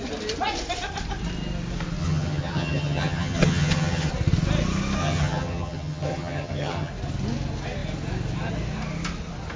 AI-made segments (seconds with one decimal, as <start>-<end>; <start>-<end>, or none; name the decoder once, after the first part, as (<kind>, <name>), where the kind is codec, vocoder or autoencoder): 2.0-4.1 (vocoder, HiFi-GAN); 5.0-6.9